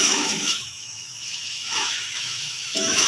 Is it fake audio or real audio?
fake